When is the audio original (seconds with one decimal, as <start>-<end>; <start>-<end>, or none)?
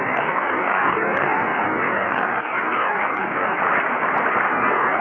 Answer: 3.6-4.5